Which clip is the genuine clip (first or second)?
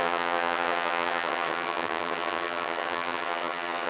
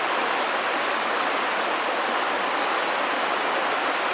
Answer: second